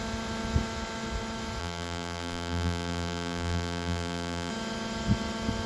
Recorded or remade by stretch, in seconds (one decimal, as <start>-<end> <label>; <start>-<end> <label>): 0.0-1.6 recorded; 1.6-4.5 remade; 4.5-5.7 recorded